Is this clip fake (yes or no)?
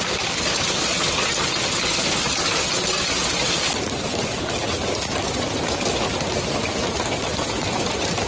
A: no